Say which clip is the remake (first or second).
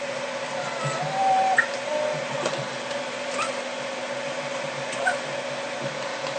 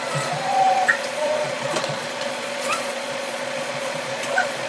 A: second